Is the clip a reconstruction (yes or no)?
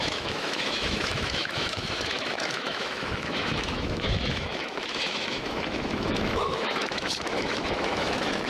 yes